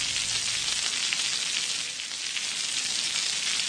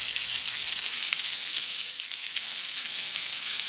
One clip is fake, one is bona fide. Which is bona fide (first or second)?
first